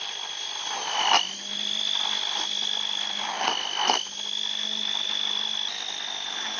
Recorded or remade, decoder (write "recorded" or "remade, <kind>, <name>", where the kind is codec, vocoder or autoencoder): recorded